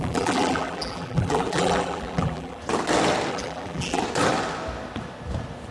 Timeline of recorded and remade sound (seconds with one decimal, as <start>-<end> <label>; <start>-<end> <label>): 0.0-2.6 remade; 2.6-3.3 recorded; 3.3-4.0 remade; 4.0-5.7 recorded